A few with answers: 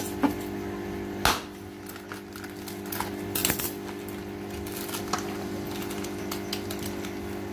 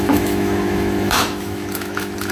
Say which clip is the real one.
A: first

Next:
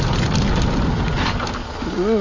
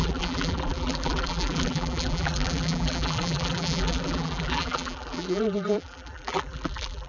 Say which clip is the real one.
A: first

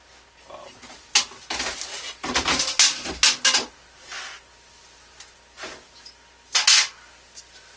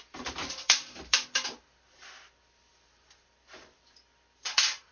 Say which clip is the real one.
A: first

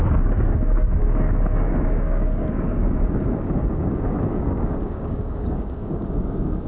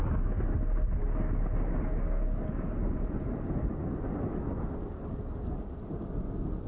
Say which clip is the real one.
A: second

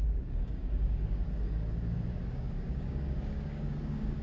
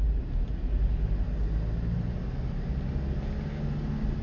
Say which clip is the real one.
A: second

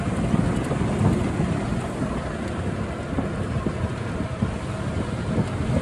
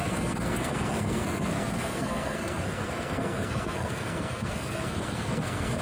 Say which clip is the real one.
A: first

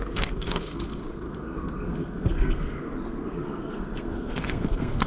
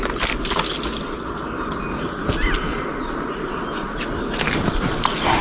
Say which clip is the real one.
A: second